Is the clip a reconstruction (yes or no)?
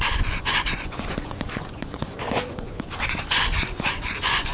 yes